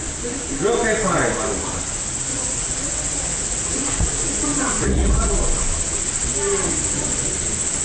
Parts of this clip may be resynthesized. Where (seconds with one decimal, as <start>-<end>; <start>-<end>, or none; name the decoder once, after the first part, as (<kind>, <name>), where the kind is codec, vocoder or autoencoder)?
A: 2.3-5.3 (vocoder, Vocos)